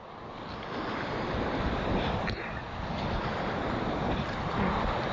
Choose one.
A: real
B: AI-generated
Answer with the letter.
A